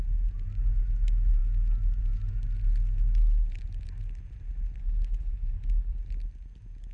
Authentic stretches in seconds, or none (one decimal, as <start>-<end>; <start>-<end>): 0.0-4.8; 6.0-6.9